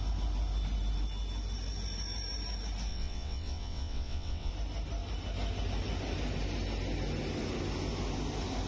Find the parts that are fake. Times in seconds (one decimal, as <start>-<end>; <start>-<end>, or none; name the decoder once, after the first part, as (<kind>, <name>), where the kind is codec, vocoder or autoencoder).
2.9-4.5 (vocoder, WaveNeXt)

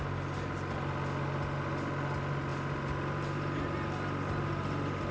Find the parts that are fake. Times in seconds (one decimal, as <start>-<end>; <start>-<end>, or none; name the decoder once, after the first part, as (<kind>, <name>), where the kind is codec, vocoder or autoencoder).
none

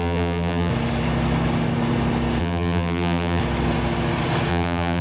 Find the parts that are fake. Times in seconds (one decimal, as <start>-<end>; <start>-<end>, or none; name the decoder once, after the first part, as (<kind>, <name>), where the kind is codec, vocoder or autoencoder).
0.0-0.7 (vocoder, BigVGAN v2); 2.4-3.4; 4.5-5.0